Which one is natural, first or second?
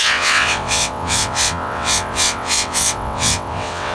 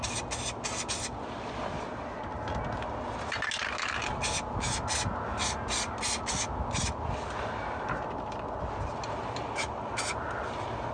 second